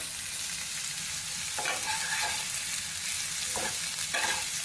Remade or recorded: recorded